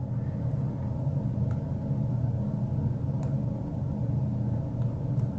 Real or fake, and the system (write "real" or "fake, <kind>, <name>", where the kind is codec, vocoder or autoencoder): real